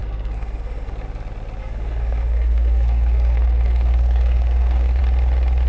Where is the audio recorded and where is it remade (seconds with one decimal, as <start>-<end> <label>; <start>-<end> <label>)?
0.0-0.9 remade; 0.9-1.6 recorded; 1.6-5.0 remade; 5.0-5.7 recorded